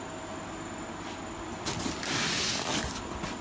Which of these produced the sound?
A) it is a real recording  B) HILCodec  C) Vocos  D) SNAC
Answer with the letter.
A